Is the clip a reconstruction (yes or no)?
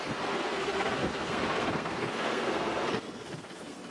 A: yes